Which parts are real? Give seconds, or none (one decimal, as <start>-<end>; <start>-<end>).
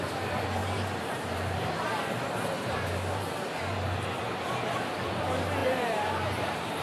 0.0-0.6; 4.1-5.6